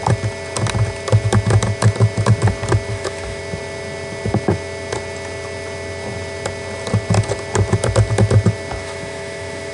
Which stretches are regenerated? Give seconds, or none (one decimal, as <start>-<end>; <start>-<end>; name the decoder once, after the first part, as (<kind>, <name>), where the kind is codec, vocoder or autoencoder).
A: 2.9-3.4 (autoencoder, DAC-VAE); 8.8-9.7